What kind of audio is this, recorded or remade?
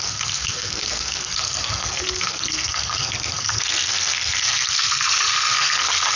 remade